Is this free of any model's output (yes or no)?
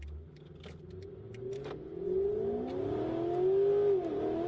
yes